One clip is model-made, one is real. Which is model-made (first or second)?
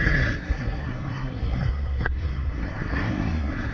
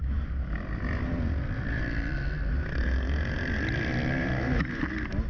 first